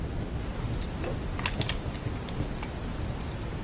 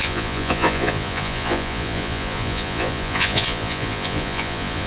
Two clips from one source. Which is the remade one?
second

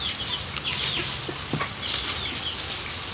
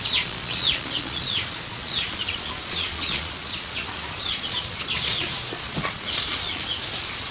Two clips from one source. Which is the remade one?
second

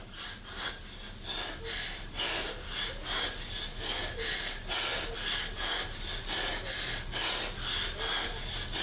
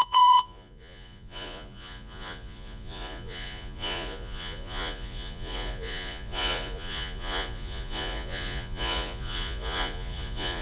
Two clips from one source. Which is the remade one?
second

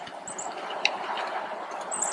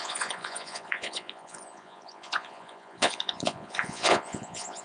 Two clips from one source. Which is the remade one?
second